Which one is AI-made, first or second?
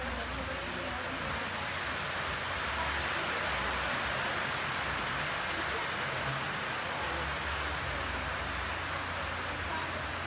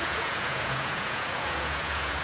second